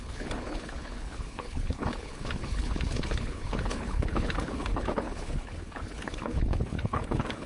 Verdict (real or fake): fake